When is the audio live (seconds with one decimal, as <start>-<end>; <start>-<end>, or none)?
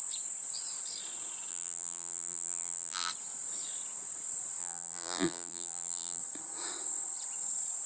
0.0-1.5; 3.1-4.6; 6.2-7.9